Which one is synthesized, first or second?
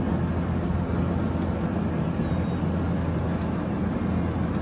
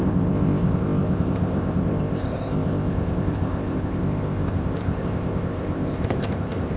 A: second